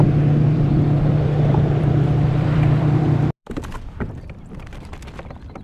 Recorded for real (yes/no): no